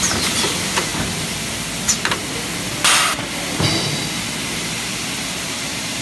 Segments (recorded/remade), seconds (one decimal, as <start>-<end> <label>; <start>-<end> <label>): 0.0-0.9 remade; 0.9-4.5 recorded; 4.5-6.0 remade